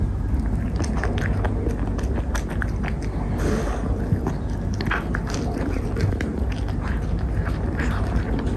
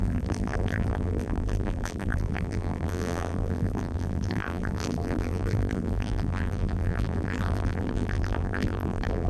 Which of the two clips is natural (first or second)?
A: first